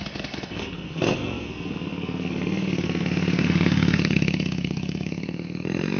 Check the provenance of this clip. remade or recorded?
remade